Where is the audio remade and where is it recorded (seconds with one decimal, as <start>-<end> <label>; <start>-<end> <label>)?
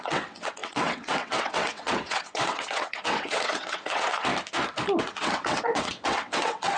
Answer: 0.0-4.3 remade; 4.3-5.0 recorded; 5.0-6.8 remade